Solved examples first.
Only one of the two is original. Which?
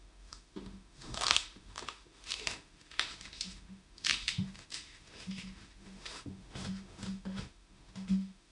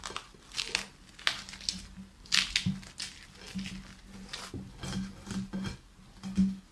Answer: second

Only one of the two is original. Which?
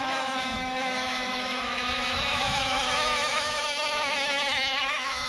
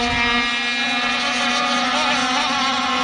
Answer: second